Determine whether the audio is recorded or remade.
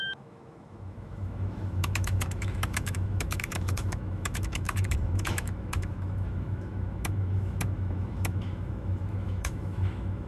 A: remade